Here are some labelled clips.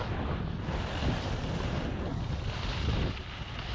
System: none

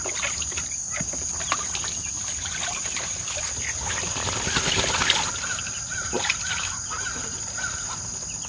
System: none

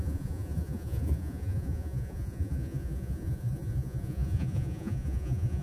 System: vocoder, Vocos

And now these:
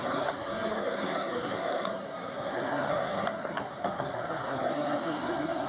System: codec, SNAC